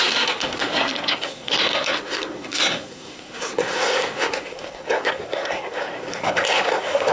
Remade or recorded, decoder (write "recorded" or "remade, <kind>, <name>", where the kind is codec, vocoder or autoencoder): remade, codec, SNAC